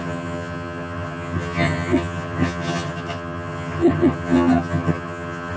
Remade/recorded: remade